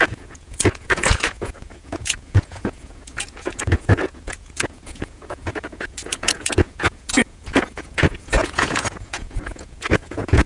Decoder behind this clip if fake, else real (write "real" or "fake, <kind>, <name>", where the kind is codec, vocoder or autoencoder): fake, vocoder, Vocos